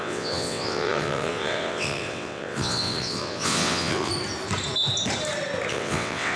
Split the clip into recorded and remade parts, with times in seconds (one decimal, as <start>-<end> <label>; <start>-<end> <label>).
0.0-4.1 remade; 4.1-5.7 recorded; 5.7-6.4 remade